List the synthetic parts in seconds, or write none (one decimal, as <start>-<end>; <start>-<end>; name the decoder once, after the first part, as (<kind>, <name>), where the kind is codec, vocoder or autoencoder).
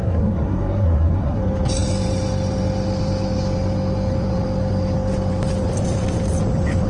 0.0-1.4 (codec, SNAC)